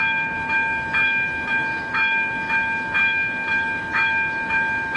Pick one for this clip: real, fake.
fake